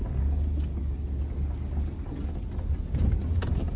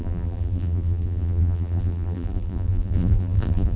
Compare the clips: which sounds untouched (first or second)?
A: first